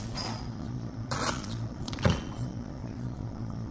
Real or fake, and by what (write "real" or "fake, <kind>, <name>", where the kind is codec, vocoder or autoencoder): fake, vocoder, Vocos